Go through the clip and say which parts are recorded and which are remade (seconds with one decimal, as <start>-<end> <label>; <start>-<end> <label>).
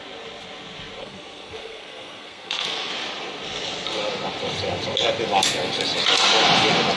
0.0-1.0 recorded; 1.0-2.9 remade; 2.9-7.0 recorded